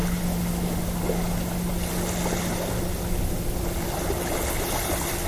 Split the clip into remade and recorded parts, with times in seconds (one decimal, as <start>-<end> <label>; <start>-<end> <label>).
0.0-5.3 recorded